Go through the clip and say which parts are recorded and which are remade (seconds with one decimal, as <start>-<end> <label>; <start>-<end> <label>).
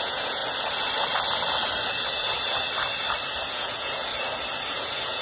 0.0-0.4 remade; 0.4-3.5 recorded; 3.5-4.1 remade; 4.1-4.7 recorded; 4.7-5.2 remade